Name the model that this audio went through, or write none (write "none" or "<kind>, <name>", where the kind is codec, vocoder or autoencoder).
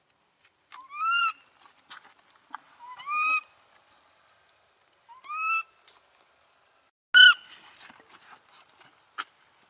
none